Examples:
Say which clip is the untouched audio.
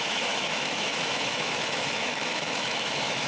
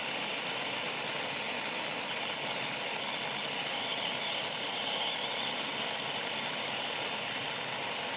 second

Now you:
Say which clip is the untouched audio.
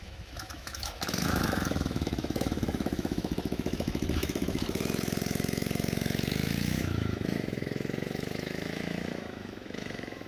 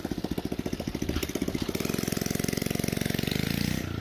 second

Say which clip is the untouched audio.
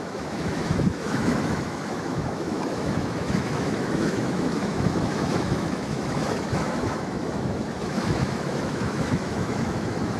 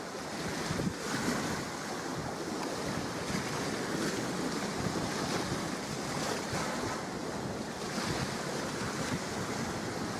second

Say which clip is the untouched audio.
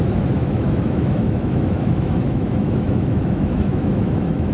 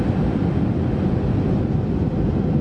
second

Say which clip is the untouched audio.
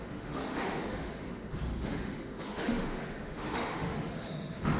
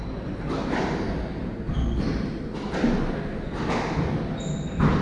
second